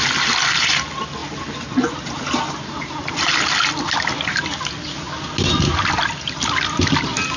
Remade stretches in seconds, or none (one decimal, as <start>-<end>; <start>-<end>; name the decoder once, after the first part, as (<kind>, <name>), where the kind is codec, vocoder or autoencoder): none